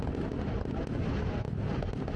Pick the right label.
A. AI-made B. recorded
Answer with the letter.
B